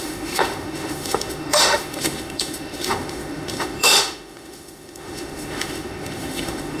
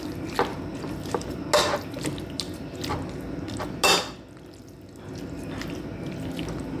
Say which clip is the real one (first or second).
second